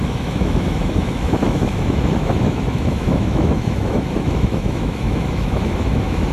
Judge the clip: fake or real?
fake